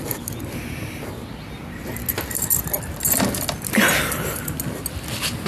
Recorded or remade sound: recorded